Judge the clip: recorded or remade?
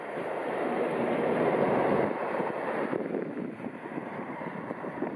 remade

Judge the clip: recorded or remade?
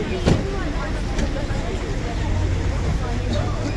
recorded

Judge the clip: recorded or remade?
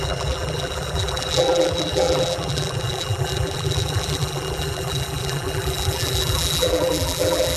remade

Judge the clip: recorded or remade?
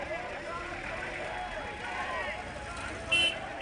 recorded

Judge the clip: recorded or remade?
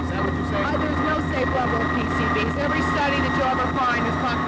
recorded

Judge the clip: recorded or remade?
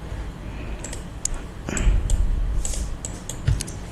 recorded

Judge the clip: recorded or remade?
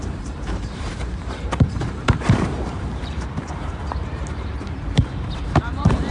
remade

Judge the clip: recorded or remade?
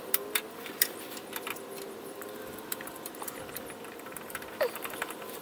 remade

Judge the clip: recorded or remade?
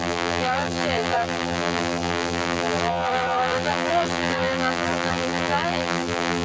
remade